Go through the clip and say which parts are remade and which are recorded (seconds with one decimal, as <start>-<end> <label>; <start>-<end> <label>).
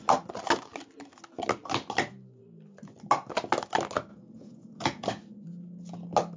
0.0-4.1 recorded; 4.1-5.1 remade; 5.1-6.4 recorded